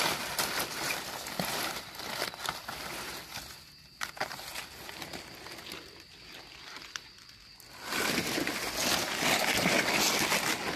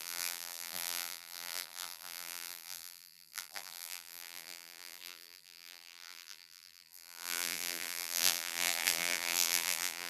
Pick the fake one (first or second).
second